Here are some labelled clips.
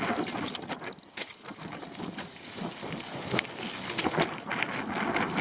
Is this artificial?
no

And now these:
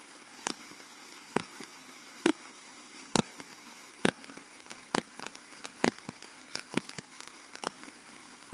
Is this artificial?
yes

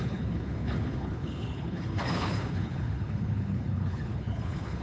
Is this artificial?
yes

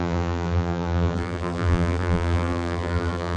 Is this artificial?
yes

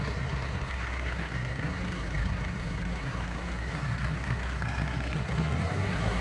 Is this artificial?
yes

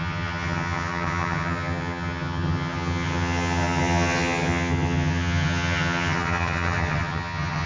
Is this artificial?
yes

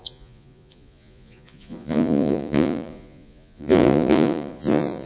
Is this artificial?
yes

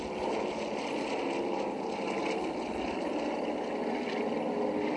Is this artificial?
no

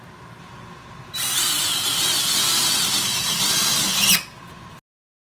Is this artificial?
no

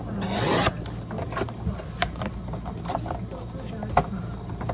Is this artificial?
no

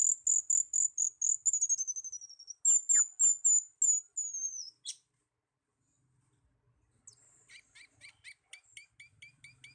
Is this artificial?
no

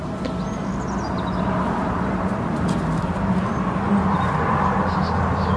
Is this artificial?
no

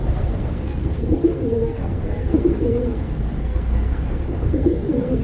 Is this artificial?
yes